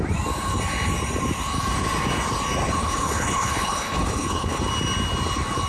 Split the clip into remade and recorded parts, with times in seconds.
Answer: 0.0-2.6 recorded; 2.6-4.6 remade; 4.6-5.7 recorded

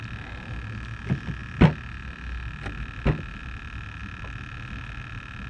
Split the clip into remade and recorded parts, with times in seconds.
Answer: 0.0-5.5 recorded

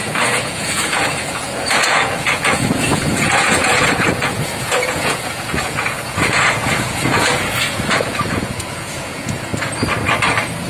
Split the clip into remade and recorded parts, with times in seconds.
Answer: 0.0-9.5 remade; 9.5-10.7 recorded

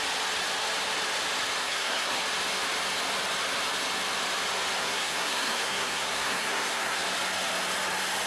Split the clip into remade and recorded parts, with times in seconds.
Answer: 0.0-1.6 recorded; 1.6-2.2 remade; 2.2-4.8 recorded; 4.8-7.0 remade; 7.0-8.3 recorded

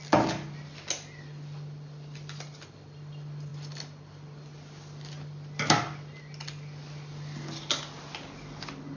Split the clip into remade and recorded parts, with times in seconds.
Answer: 0.0-9.0 recorded

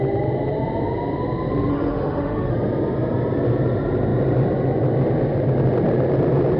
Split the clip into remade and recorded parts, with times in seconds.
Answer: 0.0-1.7 recorded; 1.7-2.5 remade; 2.5-6.6 recorded

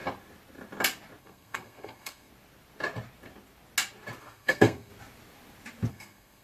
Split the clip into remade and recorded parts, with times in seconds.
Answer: 0.0-1.2 recorded; 1.2-2.3 remade; 2.3-4.2 recorded; 4.2-4.9 remade; 4.9-5.9 recorded; 5.9-6.4 remade